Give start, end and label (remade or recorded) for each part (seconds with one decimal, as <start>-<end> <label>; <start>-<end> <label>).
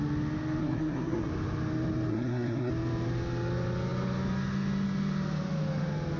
0.0-0.6 recorded; 0.6-1.3 remade; 1.3-2.1 recorded; 2.1-2.7 remade; 2.7-6.2 recorded